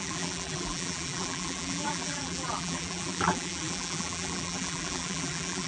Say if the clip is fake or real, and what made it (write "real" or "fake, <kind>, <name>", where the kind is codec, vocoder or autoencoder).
fake, vocoder, BigVGAN v2